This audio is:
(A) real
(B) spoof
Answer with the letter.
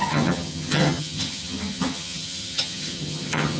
B